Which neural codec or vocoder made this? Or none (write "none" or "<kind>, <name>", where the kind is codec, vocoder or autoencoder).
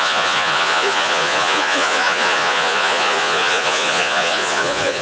vocoder, Vocos